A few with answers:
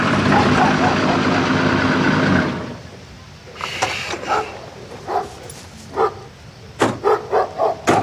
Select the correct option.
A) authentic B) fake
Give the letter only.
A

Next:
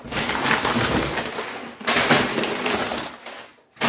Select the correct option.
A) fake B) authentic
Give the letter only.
B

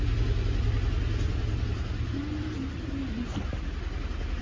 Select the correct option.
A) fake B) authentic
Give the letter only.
B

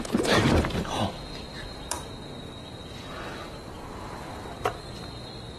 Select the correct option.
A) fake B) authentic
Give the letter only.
B